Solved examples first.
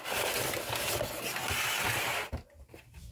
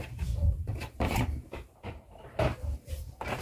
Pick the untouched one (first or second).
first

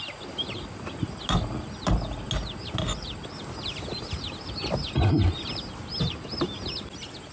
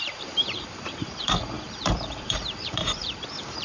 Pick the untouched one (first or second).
first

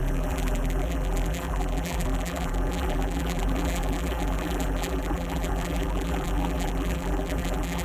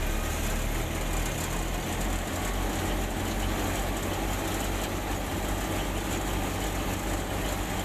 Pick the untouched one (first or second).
second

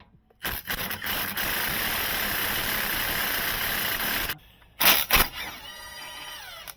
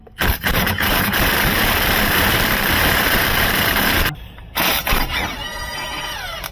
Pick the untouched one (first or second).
first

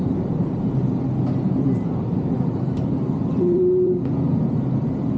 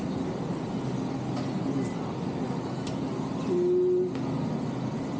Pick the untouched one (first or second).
second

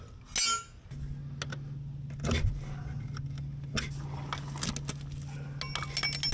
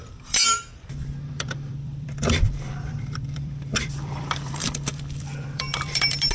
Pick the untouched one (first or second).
first